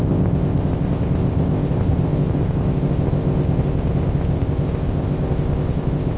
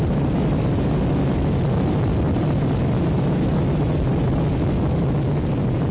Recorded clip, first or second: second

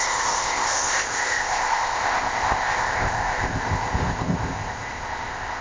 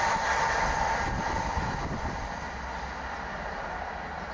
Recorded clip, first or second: second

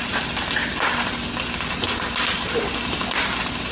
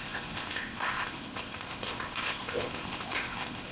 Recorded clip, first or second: first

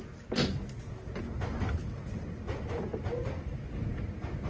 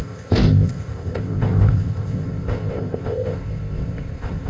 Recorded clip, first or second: first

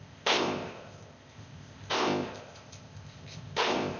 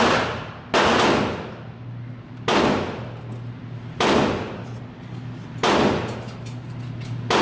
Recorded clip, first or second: second